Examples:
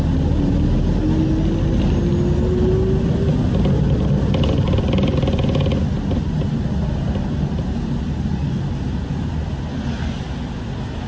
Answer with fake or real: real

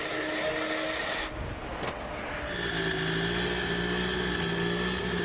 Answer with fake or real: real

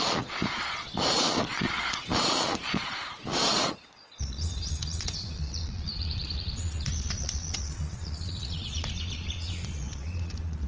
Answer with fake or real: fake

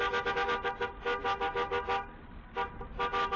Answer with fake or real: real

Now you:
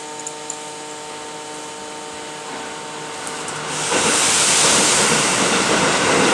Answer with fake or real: real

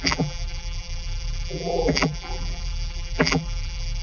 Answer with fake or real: fake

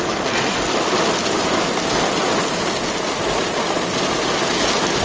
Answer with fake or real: real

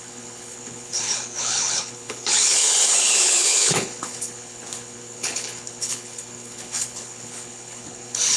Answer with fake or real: fake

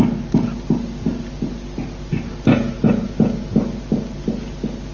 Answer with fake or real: real